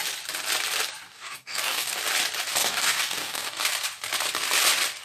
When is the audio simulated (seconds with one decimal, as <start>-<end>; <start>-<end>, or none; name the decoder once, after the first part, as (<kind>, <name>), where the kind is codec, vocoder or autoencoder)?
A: 1.1-2.0 (codec, DAC); 2.6-3.6